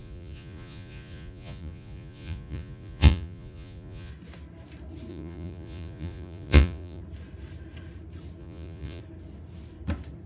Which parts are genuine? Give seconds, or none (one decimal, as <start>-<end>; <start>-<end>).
4.1-5.1; 7.0-8.4; 9.0-10.3